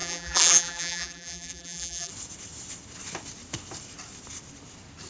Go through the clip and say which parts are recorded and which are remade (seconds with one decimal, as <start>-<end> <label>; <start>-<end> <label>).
0.0-2.1 remade; 2.1-5.1 recorded